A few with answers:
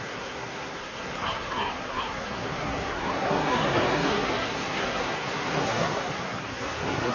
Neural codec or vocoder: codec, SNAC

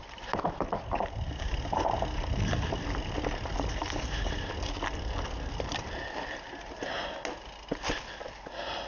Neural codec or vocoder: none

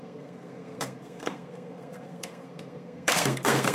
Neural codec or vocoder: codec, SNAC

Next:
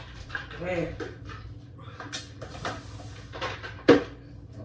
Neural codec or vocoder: none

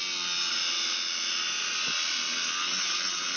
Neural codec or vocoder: none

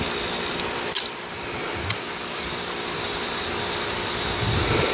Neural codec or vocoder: none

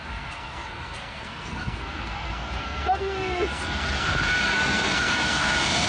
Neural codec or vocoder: codec, SNAC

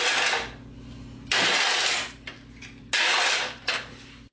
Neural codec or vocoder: none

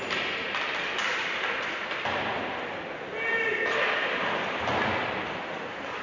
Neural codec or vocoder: none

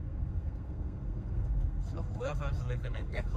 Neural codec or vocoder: codec, SNAC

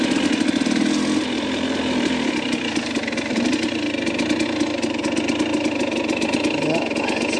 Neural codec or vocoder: none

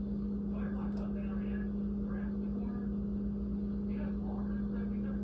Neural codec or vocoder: none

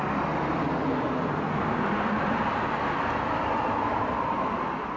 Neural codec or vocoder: none